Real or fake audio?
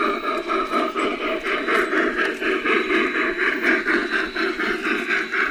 fake